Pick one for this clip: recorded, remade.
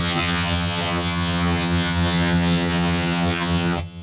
remade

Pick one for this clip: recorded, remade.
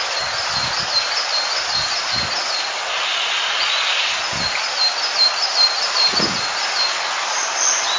recorded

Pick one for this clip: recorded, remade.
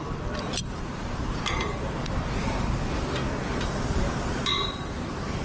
recorded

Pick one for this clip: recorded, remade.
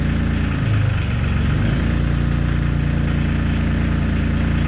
recorded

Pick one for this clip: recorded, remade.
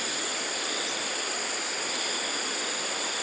recorded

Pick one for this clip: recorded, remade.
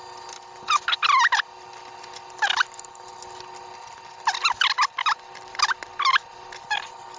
recorded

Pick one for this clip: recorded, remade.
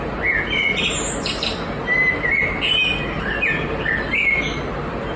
recorded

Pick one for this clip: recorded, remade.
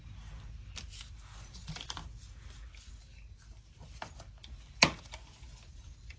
recorded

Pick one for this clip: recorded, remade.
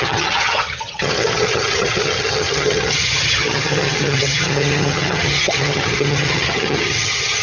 remade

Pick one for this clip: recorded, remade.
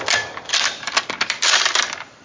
recorded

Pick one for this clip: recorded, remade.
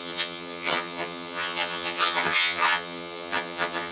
remade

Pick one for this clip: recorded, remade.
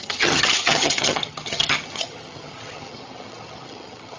remade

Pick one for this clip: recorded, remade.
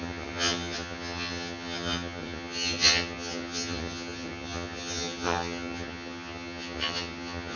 remade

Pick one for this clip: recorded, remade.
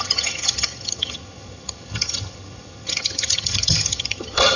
remade